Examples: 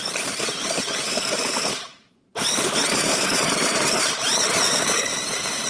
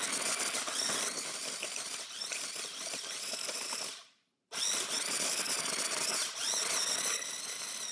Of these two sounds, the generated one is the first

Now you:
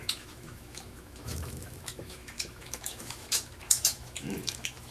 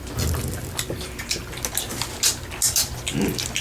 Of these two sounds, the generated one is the first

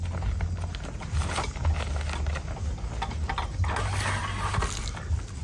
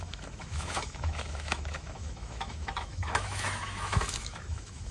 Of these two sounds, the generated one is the second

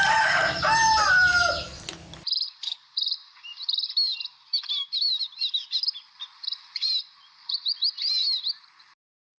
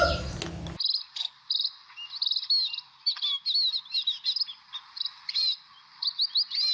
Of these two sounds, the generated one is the first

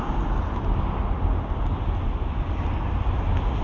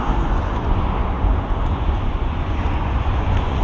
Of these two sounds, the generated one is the second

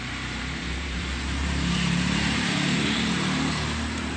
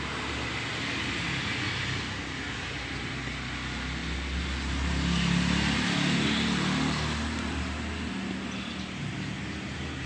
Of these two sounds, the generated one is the first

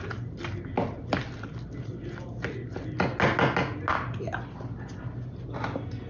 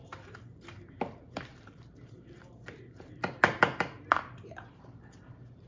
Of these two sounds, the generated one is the second